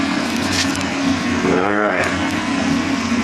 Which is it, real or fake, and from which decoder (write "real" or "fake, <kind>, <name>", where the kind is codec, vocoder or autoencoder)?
fake, codec, SNAC